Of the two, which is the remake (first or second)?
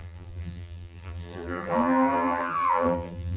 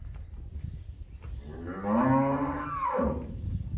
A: first